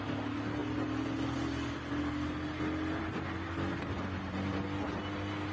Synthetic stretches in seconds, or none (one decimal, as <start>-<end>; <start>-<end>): none